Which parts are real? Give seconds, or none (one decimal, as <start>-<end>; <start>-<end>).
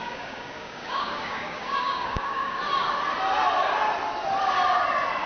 2.6-5.3